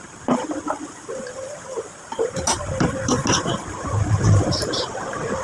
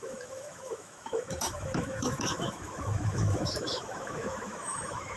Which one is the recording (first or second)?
first